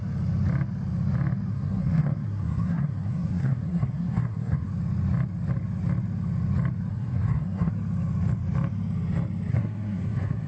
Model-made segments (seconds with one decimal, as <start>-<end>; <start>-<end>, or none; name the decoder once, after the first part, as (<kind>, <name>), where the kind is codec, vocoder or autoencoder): 1.5-4.7 (codec, SNAC); 6.9-7.7; 9.5-10.5